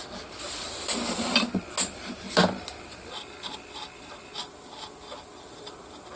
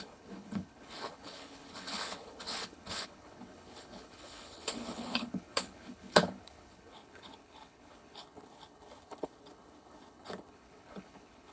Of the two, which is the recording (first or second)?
first